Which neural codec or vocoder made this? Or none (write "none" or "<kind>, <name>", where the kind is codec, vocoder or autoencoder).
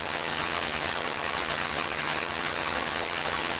vocoder, HiFi-GAN